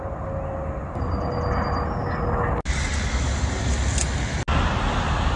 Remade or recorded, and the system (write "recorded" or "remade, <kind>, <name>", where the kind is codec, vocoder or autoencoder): recorded